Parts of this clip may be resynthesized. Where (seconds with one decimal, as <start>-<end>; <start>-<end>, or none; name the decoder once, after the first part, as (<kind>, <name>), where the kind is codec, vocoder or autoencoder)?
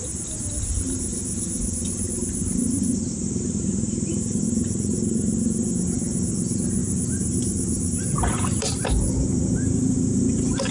1.1-4.4 (vocoder, BigVGAN v2); 6.8-10.7